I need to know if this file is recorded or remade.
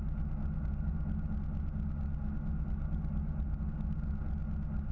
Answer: recorded